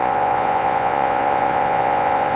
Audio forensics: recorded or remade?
remade